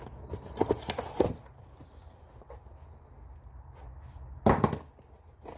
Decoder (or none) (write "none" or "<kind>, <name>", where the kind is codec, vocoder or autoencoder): none